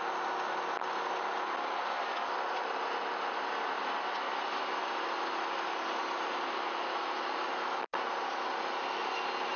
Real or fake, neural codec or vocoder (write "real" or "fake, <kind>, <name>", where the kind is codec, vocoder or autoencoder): real